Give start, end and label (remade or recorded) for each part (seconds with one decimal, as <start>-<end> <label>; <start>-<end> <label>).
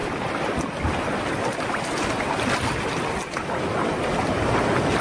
0.0-5.0 recorded